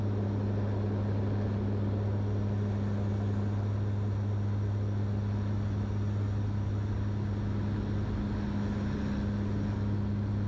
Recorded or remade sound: recorded